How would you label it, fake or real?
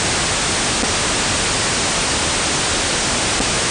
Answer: real